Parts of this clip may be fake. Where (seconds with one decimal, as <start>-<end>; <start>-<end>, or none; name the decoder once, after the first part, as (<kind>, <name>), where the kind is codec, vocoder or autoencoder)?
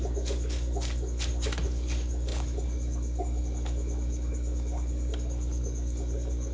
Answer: 0.0-6.5 (codec, DAC)